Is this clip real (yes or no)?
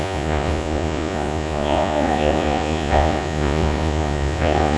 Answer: no